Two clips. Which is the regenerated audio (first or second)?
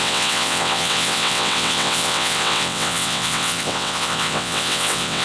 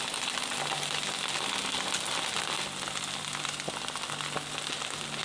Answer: first